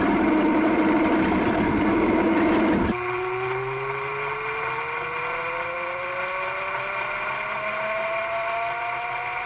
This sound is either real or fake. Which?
real